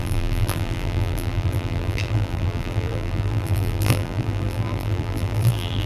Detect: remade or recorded remade